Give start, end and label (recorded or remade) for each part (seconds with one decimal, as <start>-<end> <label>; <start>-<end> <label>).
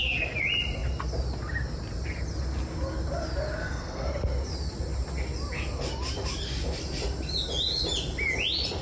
0.0-3.6 recorded; 3.6-4.1 remade; 4.1-8.8 recorded